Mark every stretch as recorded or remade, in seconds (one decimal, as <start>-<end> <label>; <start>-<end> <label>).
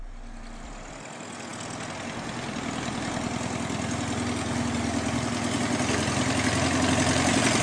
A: 0.0-7.6 recorded